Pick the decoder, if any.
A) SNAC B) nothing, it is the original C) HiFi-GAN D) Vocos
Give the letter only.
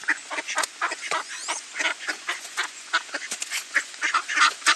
D